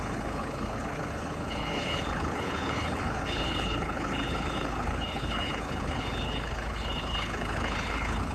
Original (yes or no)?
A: no